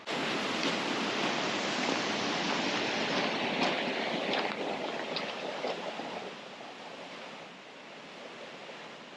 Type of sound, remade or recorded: recorded